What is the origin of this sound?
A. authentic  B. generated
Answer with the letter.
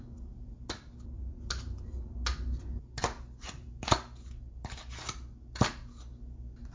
A